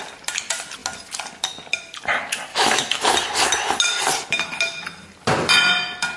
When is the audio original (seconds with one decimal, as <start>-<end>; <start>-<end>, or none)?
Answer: 0.0-2.5; 3.1-6.2

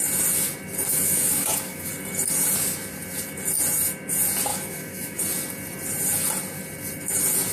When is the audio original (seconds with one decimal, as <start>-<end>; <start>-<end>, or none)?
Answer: 0.0-0.9; 1.9-4.5; 5.2-7.5

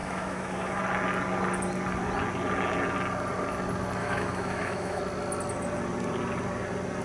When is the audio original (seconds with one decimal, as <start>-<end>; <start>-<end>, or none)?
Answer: 0.8-4.0; 5.0-7.0

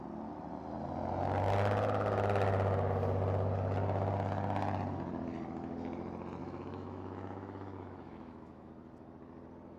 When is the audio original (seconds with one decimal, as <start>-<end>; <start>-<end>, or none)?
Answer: 0.0-6.4; 8.7-9.8

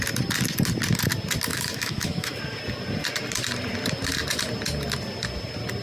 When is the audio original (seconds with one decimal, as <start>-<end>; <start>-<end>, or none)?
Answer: 0.0-1.5; 2.4-5.8

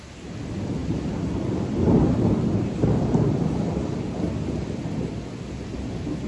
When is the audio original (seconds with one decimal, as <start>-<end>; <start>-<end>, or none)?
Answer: 0.0-6.3

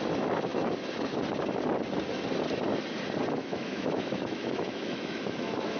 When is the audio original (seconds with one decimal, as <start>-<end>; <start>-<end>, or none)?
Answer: 0.0-3.4